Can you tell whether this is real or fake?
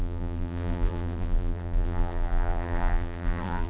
fake